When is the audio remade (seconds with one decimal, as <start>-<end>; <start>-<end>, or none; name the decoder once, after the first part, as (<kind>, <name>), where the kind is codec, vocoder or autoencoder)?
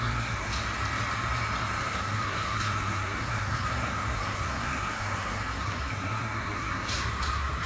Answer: 0.0-0.5 (codec, SNAC); 1.9-7.7